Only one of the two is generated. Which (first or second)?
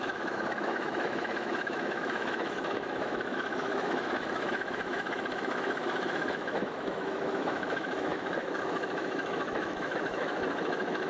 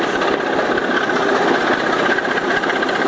first